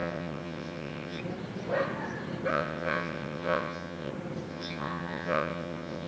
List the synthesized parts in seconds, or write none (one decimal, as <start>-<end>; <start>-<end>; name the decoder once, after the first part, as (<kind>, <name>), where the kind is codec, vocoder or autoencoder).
0.0-1.2 (vocoder, WaveNeXt); 2.5-4.1; 4.5-6.1